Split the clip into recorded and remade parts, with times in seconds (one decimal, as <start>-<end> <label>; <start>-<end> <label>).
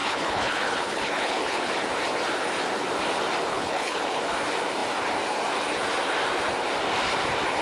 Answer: 0.0-1.7 remade; 1.7-3.5 recorded; 3.5-4.2 remade; 4.2-7.6 recorded